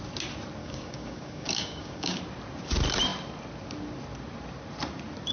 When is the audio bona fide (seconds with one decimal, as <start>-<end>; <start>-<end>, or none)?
0.0-0.6; 2.2-5.3